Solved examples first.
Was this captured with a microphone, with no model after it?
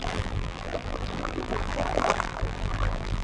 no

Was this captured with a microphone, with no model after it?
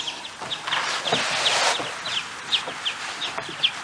yes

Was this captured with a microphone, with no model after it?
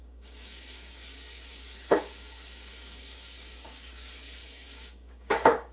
no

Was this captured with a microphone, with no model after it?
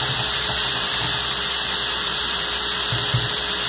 no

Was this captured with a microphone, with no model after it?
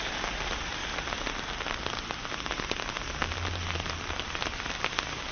yes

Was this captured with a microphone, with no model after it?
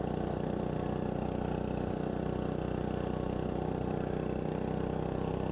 yes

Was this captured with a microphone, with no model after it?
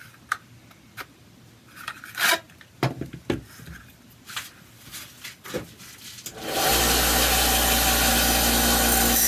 yes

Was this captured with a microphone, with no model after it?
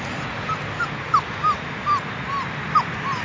yes